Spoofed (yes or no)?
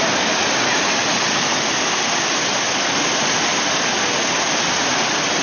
no